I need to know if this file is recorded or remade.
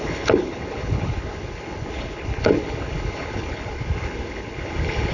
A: remade